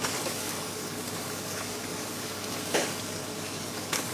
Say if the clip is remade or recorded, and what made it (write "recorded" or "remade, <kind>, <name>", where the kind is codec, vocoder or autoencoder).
remade, codec, DAC